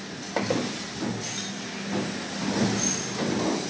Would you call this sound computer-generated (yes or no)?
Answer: no